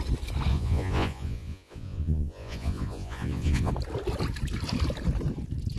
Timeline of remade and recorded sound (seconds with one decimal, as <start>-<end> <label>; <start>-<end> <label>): 0.0-0.5 recorded; 0.5-3.7 remade; 3.7-5.8 recorded